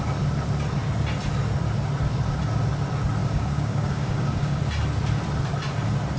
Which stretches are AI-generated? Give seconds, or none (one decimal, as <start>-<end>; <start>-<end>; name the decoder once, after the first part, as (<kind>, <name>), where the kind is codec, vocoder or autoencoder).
3.2-4.6 (codec, DAC)